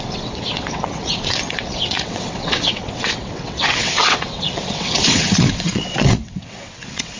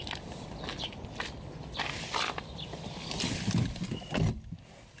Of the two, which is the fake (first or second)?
first